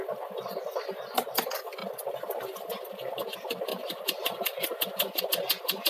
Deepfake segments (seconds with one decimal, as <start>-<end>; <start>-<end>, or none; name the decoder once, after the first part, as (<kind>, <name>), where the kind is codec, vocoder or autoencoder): 3.7-5.2 (vocoder, BigVGAN v2)